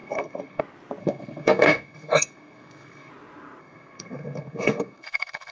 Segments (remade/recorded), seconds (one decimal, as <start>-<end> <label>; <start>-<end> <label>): 0.0-0.6 remade; 0.6-1.0 recorded; 1.0-3.1 remade; 3.1-3.6 recorded; 3.6-5.5 remade